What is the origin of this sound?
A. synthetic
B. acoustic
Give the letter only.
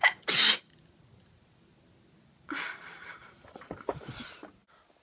B